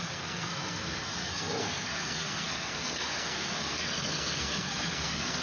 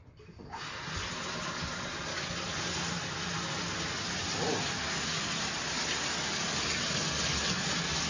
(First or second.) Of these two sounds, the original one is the second